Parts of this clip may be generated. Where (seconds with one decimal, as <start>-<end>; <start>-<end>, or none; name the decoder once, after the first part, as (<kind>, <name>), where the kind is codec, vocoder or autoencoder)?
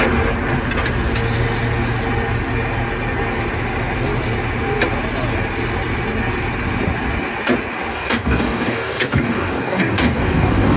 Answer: 7.9-10.8 (codec, DAC)